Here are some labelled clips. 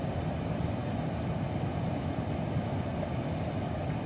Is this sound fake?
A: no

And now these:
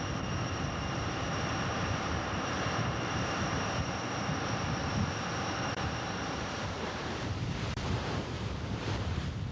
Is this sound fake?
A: yes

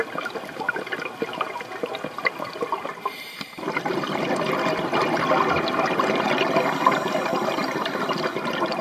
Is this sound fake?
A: no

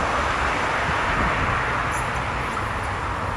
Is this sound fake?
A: no